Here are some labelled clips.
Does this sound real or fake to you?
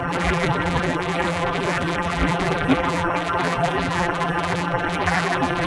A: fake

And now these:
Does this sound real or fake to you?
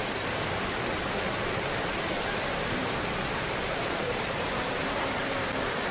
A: fake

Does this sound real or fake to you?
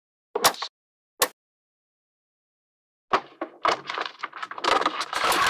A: real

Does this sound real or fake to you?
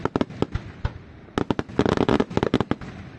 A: real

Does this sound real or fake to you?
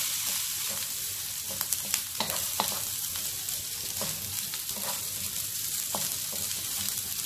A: fake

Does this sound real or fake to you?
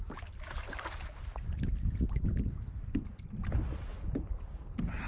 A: real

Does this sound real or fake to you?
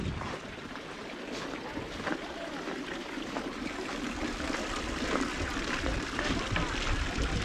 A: real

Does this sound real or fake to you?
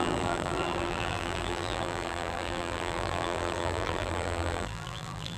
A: fake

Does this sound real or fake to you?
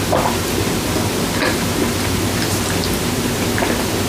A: fake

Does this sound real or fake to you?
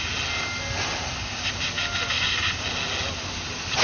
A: real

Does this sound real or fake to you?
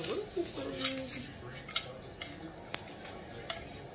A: real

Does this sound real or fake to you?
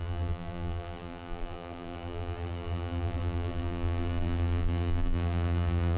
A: fake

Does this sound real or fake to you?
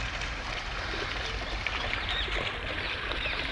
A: fake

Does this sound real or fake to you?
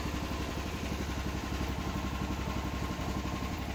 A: fake